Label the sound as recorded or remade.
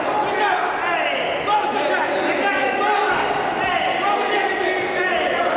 recorded